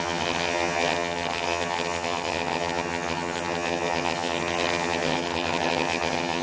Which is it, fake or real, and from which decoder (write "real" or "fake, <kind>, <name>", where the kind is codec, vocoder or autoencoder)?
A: fake, vocoder, HiFi-GAN